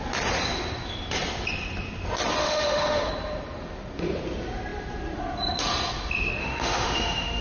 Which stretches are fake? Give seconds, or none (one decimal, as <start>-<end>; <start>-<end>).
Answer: 2.4-3.1; 6.4-7.4